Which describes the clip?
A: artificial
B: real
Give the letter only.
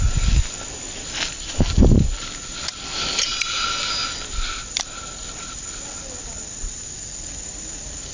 B